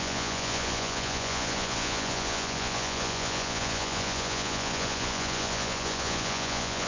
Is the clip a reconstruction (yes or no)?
yes